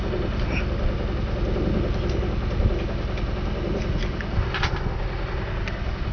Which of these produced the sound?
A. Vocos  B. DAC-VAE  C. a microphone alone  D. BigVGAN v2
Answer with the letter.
C